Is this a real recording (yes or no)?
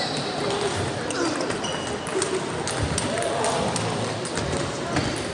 yes